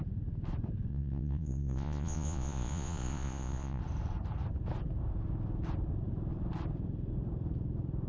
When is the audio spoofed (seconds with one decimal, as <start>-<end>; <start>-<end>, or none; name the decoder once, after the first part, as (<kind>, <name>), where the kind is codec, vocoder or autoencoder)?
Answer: 0.9-3.8 (vocoder, Vocos)